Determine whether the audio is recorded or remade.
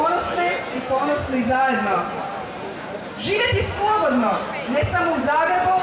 recorded